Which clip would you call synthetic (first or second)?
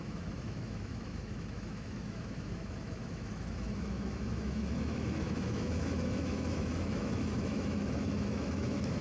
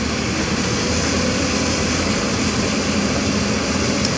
first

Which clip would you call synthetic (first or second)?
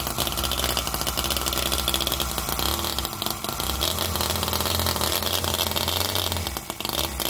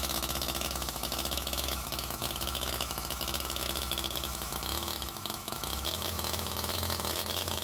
second